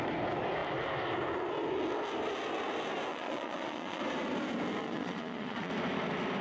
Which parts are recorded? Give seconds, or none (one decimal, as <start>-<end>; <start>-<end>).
0.0-3.1; 4.0-4.8; 5.7-6.4